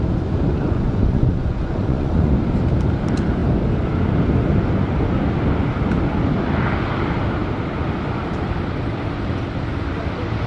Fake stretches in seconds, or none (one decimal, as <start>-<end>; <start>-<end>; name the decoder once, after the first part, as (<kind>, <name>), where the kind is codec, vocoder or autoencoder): 0.5-2.3 (vocoder, Vocos)